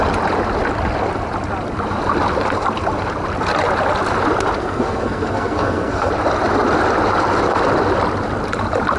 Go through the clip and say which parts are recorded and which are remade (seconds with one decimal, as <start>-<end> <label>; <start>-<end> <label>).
0.0-4.6 recorded; 4.6-6.1 remade; 6.1-9.0 recorded